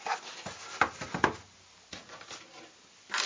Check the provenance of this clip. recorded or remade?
recorded